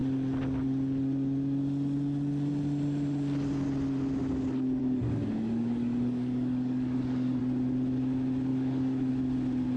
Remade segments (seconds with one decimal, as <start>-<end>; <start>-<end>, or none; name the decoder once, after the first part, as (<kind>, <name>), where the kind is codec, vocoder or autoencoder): 4.8-7.4 (codec, DAC); 8.5-9.1